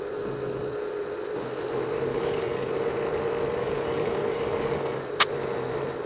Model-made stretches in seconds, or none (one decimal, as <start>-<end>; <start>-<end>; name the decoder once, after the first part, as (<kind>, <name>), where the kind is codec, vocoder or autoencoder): 2.1-2.7 (codec, DAC); 3.6-5.0